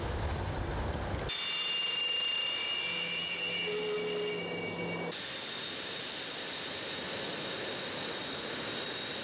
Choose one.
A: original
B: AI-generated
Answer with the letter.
A